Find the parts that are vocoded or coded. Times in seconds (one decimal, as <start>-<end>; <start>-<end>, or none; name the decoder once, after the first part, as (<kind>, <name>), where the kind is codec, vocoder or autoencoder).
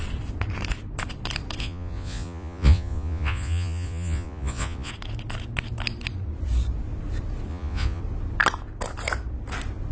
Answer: 1.6-4.9 (vocoder, Vocos); 7.5-8.0